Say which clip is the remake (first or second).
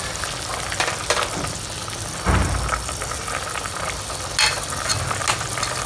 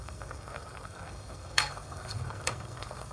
second